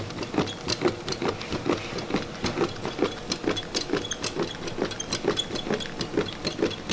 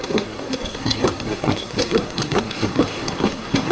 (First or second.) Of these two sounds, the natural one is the first